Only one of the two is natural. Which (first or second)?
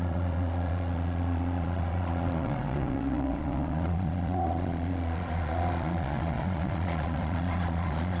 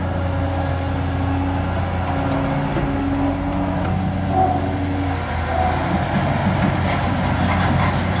second